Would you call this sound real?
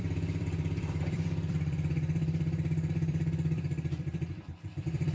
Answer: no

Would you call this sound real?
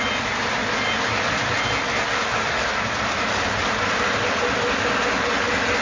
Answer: yes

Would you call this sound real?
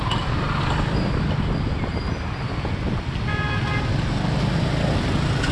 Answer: yes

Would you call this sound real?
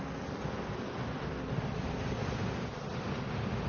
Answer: yes